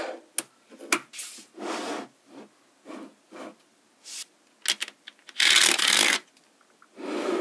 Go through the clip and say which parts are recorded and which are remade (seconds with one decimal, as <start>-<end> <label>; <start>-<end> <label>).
0.0-7.4 recorded